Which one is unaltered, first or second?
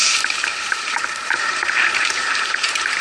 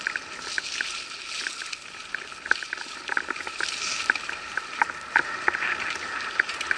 second